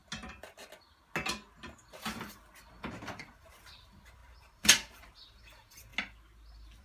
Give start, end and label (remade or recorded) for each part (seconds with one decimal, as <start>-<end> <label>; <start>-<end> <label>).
0.0-2.7 recorded; 2.7-5.9 remade; 5.9-6.8 recorded